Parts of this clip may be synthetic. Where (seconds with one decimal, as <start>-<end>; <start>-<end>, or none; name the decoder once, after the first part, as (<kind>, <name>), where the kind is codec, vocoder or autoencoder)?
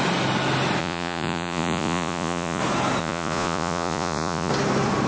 0.8-2.6 (vocoder, Vocos); 3.0-4.5